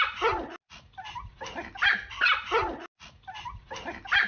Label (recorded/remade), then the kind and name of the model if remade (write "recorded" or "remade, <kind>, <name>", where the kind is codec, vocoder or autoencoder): recorded